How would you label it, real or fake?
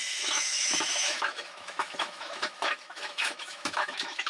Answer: fake